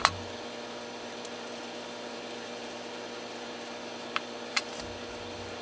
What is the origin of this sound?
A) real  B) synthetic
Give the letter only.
A